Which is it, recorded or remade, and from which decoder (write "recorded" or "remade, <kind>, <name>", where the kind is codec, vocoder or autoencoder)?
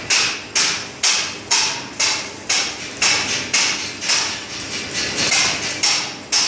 recorded